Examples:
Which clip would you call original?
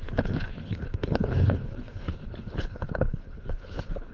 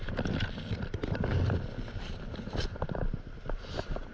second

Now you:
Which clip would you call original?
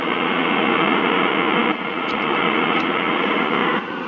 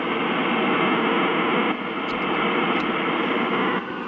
second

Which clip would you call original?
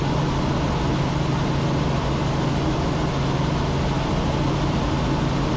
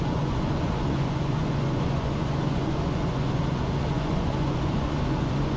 first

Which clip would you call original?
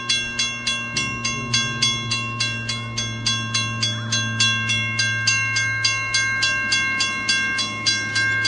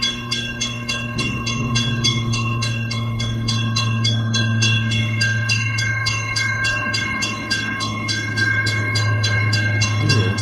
first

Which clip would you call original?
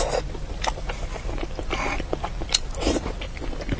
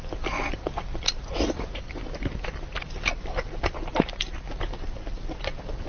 first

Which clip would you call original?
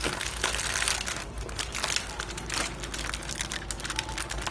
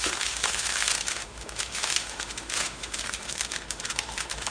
first